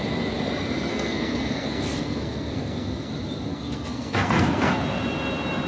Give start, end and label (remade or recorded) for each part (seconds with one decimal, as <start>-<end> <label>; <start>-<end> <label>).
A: 0.0-0.9 recorded; 0.9-3.1 remade; 3.1-3.5 recorded; 3.5-4.8 remade; 4.8-5.7 recorded